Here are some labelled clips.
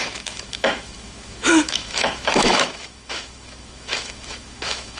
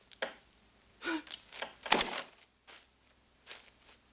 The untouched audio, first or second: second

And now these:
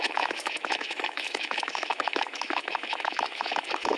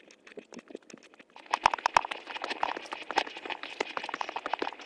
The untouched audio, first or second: second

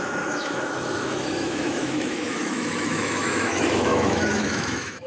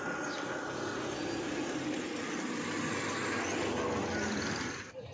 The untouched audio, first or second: second